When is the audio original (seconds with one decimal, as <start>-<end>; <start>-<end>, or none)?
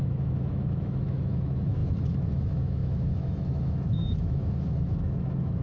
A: none